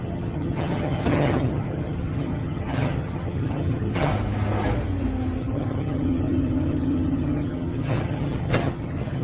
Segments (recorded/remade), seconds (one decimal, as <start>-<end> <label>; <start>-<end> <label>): 0.0-4.1 remade; 4.1-5.4 recorded; 5.4-9.2 remade